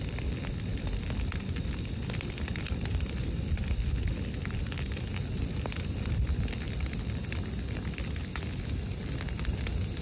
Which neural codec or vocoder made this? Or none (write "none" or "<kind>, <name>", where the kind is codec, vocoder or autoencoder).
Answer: none